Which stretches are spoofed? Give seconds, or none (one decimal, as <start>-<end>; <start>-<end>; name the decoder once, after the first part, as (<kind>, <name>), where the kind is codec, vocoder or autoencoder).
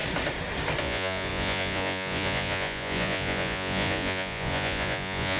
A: 0.8-5.4 (vocoder, Vocos)